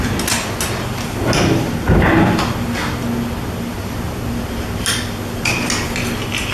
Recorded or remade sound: recorded